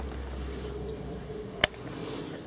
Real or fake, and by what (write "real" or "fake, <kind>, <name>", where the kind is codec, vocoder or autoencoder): real